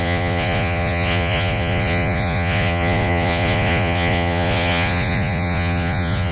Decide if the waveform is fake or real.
fake